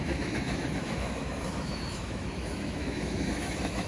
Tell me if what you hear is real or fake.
fake